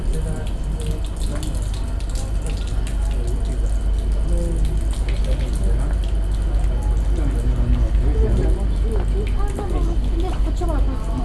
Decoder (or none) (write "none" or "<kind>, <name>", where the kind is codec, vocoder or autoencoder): none